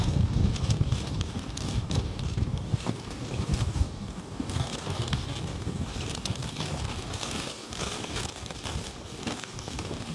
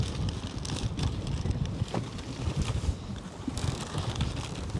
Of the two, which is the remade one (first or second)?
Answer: first